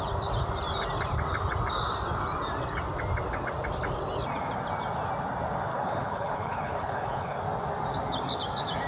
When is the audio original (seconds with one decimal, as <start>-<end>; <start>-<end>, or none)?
0.0-5.7; 7.4-8.9

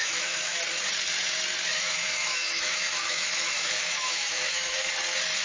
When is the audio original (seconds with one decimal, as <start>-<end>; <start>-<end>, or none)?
0.6-1.7; 4.9-5.4

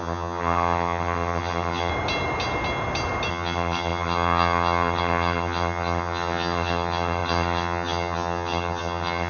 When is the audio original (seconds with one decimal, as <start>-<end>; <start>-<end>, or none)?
1.9-3.3